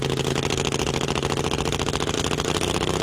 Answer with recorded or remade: recorded